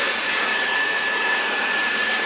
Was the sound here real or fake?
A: fake